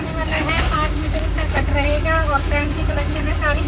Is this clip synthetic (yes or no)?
yes